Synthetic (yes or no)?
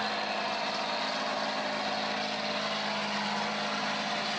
no